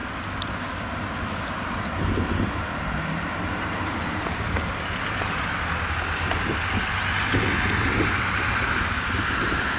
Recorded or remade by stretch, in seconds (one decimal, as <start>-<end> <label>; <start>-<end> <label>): 0.0-9.8 recorded